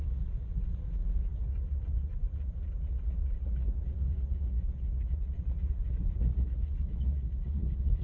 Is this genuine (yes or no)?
no